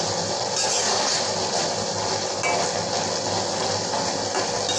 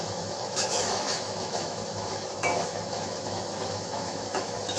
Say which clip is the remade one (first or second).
second